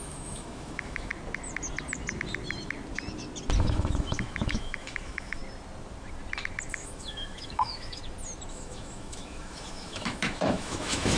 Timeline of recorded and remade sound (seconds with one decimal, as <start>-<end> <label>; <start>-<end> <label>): 0.0-1.1 remade; 1.1-3.6 recorded; 3.6-5.4 remade; 5.4-6.7 recorded; 6.7-8.0 remade; 8.0-8.5 recorded; 8.5-11.2 remade